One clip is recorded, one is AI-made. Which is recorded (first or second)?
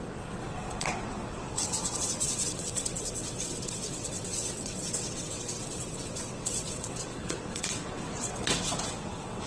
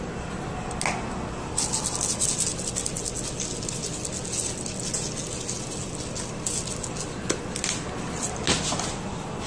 second